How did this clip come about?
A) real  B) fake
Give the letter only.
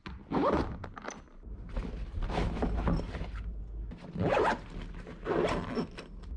A